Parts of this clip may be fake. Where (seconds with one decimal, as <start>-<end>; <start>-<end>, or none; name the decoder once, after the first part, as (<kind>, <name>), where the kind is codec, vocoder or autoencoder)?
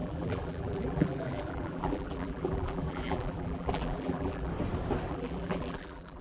0.0-4.5 (vocoder, BigVGAN v2); 5.1-6.2